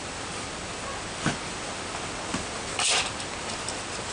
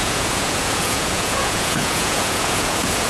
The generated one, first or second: second